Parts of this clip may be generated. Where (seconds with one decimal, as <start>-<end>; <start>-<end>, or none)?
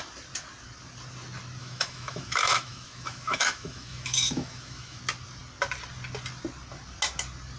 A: 1.6-5.0